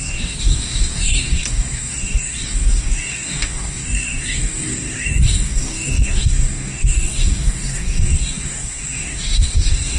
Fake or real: fake